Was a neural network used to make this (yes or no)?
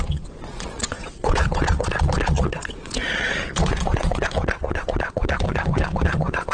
yes